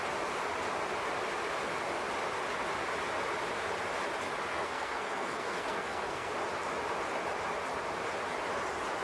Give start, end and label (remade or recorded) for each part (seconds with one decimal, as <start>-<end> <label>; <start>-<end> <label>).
0.0-4.5 recorded; 4.5-6.3 remade; 6.3-9.0 recorded